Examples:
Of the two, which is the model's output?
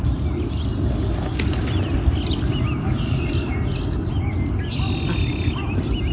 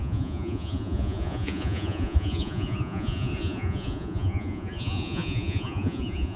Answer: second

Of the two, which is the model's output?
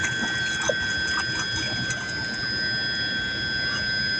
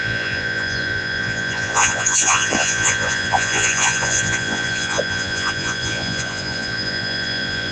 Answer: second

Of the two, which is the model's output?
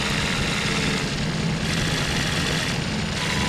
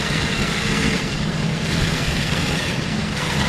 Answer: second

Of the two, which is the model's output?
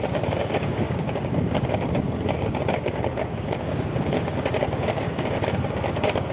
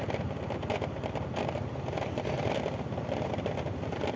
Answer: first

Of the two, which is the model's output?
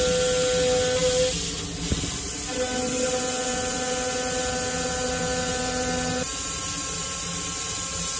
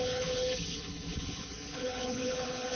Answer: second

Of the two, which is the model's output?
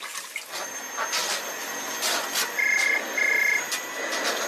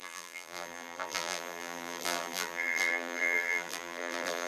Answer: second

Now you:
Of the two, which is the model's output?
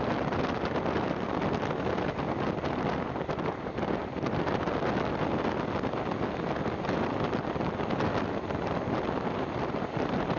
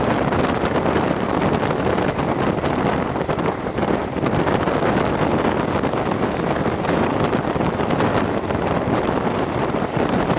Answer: second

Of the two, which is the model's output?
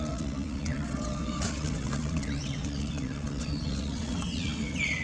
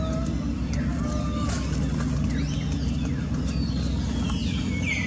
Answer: first